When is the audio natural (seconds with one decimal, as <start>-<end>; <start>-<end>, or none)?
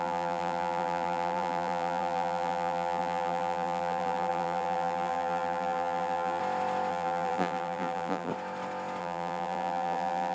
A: 6.4-6.9; 8.3-9.0